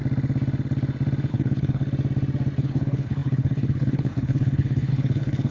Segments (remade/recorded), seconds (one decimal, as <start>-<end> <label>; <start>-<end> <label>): 0.0-1.3 recorded; 1.3-1.8 remade; 1.8-2.6 recorded; 2.6-5.5 remade